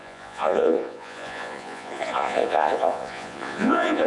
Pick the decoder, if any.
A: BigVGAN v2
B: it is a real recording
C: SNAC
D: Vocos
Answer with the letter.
D